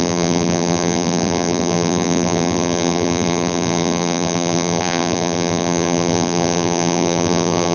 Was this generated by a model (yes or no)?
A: yes